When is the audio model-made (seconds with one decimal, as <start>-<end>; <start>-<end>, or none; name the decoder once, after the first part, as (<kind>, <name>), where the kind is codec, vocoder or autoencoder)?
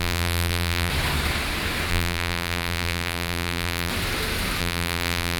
0.0-0.9 (vocoder, BigVGAN v2); 1.9-3.9; 4.6-5.4